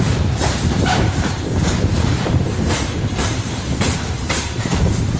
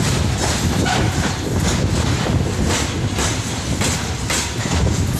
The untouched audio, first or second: second